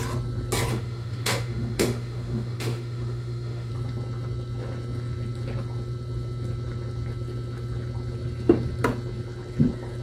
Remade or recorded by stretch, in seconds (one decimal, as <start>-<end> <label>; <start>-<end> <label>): 0.0-0.7 recorded; 0.7-3.7 remade; 3.7-10.0 recorded